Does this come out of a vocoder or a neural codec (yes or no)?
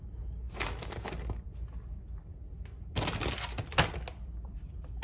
no